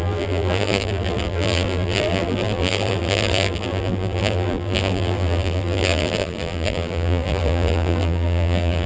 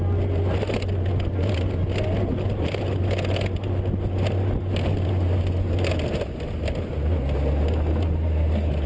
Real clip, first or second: second